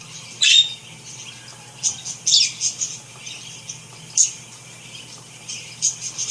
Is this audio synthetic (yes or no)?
no